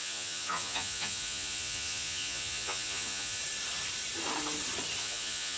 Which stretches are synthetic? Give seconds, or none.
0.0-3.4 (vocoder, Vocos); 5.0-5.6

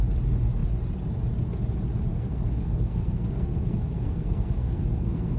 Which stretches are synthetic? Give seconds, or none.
2.1-5.4 (codec, SNAC)

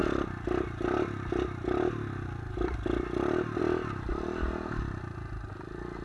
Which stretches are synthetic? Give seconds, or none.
none

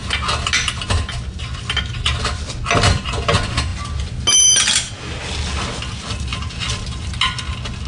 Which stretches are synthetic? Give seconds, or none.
none